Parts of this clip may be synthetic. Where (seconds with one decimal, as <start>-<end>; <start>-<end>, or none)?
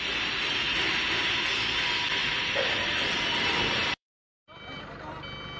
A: 2.2-4.8